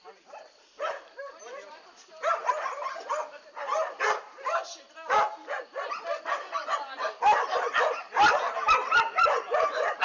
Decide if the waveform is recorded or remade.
recorded